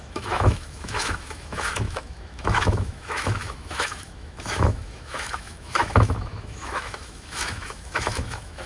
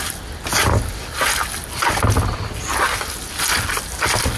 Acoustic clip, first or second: second